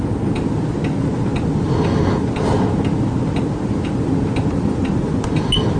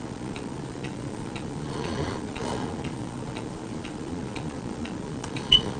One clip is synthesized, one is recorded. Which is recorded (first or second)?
first